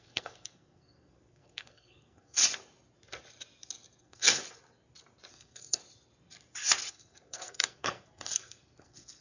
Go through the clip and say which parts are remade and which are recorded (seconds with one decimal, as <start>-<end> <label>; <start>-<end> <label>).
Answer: 0.0-2.4 remade; 2.4-4.0 recorded; 4.0-4.4 remade; 4.4-5.3 recorded; 5.3-5.8 remade; 5.8-6.9 recorded; 6.9-9.2 remade

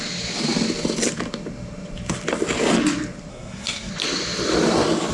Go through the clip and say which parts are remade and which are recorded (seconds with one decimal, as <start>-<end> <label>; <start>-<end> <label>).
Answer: 0.0-3.3 recorded; 3.3-3.9 remade; 3.9-5.1 recorded

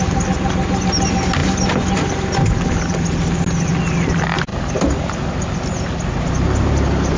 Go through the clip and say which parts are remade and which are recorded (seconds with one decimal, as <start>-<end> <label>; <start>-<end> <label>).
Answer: 0.0-7.2 recorded

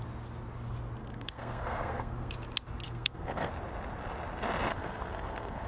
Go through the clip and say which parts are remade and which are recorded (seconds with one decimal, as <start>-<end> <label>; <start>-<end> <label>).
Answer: 0.0-1.0 recorded; 1.0-2.3 remade; 2.3-2.8 recorded; 2.8-3.5 remade; 3.5-4.7 recorded; 4.7-5.7 remade

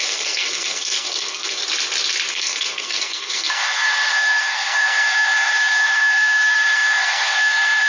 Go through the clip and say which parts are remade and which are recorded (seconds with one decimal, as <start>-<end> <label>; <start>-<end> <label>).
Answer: 0.0-1.6 remade; 1.6-2.3 recorded; 2.3-7.9 remade